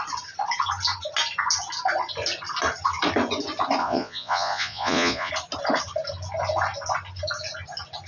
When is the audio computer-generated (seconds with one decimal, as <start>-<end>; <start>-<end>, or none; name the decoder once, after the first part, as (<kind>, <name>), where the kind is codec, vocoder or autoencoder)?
3.8-5.3 (vocoder, Vocos)